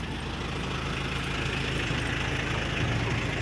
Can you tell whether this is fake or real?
real